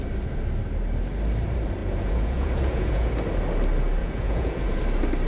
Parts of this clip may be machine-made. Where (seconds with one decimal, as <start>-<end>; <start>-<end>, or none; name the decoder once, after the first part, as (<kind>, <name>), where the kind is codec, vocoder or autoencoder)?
1.8-3.1 (vocoder, Vocos); 4.0-4.8